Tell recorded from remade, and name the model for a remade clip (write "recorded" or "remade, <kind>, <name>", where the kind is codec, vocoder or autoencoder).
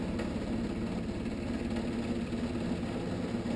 recorded